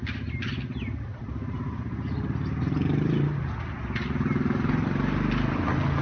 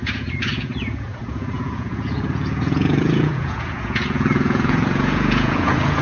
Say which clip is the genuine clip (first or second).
first